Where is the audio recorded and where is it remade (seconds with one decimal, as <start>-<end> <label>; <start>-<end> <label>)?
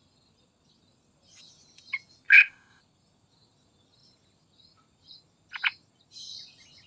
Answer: 0.0-2.3 recorded; 2.3-2.8 remade; 2.8-6.9 recorded